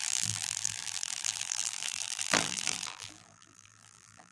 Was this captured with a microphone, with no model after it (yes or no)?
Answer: no